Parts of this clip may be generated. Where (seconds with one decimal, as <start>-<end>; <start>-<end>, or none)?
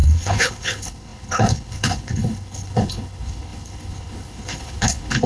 0.0-5.3